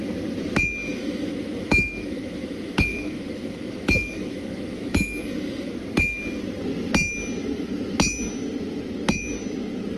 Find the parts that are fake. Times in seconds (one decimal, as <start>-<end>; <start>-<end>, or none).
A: 0.8-5.7